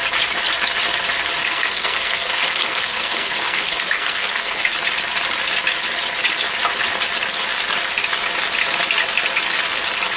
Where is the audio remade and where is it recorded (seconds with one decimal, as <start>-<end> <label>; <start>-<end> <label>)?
0.0-1.4 recorded; 1.4-4.6 remade; 4.6-10.2 recorded